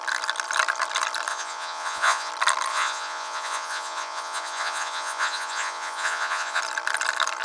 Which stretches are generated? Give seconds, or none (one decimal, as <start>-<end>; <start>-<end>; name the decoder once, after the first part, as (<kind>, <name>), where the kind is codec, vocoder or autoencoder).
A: 1.3-2.3 (vocoder, Vocos); 2.7-6.6